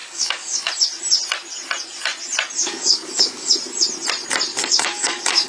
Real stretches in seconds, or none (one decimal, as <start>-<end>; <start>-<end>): 0.7-2.6; 3.5-4.5

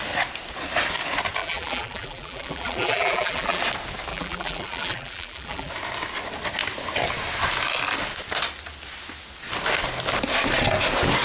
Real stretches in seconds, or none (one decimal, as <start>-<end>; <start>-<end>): 0.0-1.4; 3.6-4.1; 5.7-11.2